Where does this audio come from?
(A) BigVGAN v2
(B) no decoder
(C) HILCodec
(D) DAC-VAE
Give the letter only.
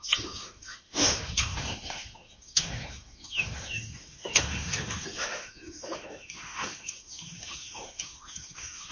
D